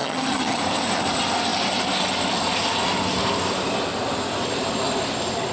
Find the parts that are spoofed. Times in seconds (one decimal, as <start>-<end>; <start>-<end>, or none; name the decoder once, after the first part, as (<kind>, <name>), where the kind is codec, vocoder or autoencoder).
0.0-0.6 (vocoder, HiFi-GAN)